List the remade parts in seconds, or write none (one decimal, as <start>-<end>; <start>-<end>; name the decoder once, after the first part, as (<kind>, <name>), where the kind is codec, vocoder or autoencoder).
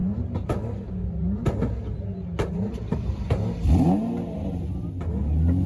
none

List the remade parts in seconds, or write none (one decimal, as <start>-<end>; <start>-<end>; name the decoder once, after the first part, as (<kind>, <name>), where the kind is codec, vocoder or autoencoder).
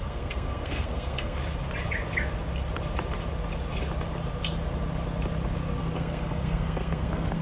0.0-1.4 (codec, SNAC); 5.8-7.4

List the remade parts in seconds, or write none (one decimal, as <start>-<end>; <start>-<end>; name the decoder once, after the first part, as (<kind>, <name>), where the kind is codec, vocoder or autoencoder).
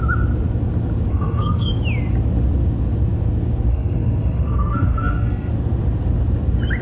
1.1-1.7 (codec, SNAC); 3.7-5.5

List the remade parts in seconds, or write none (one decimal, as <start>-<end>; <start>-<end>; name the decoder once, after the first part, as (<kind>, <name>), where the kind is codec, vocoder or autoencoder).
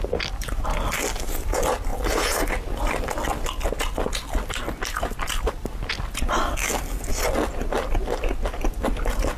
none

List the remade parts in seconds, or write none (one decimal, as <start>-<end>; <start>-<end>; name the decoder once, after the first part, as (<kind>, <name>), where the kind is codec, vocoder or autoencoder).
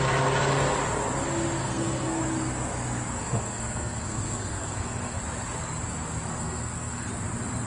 1.6-2.2 (codec, SNAC); 3.1-5.2; 6.3-7.1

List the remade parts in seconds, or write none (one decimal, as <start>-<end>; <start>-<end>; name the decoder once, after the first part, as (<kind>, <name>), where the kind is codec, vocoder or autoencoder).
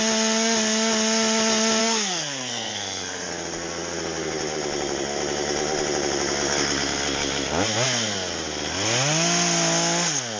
1.8-3.3 (codec, SNAC)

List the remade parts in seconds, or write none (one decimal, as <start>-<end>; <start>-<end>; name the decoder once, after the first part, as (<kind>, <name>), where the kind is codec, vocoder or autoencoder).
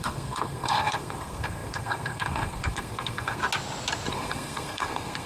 0.0-3.4 (codec, SNAC); 4.1-5.3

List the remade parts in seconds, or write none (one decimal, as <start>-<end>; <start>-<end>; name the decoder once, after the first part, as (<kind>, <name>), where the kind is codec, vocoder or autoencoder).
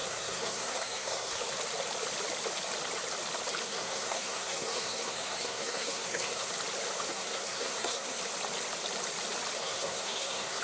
0.0-1.4 (codec, SNAC); 3.6-6.5; 7.1-8.2; 9.6-10.6